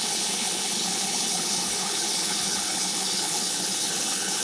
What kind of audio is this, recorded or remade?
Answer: remade